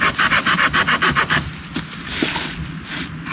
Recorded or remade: recorded